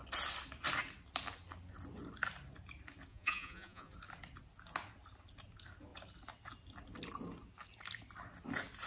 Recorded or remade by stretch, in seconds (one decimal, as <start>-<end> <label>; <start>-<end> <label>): 0.0-3.1 recorded; 3.1-3.9 remade; 3.9-8.9 recorded